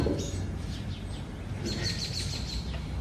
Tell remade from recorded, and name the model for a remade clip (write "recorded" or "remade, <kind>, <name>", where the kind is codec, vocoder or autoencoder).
recorded